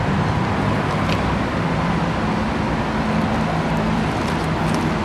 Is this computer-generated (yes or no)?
no